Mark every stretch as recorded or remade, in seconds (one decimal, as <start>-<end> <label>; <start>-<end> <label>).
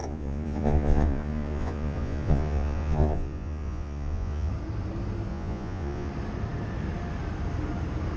0.0-4.5 remade; 4.5-5.3 recorded; 5.3-6.1 remade; 6.1-8.2 recorded